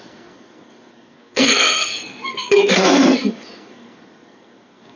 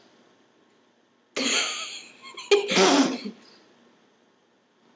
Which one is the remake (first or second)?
first